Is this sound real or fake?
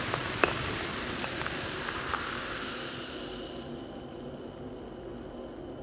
real